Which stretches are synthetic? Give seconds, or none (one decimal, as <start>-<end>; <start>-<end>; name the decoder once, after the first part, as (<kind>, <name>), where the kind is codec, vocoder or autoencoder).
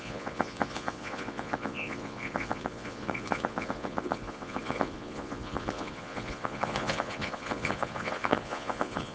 0.0-9.1 (vocoder, Vocos)